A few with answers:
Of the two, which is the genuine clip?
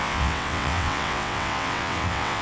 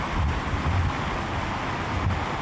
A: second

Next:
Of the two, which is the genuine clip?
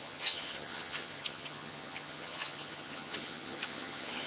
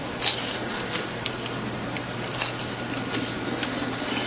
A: second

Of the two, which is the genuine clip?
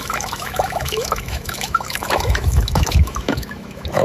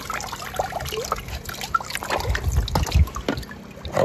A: second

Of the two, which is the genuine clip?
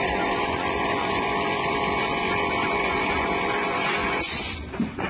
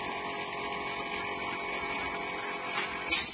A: second